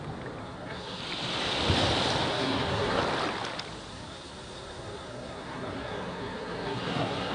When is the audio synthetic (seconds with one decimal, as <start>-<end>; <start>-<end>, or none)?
0.4-1.0; 2.3-3.0; 3.9-7.3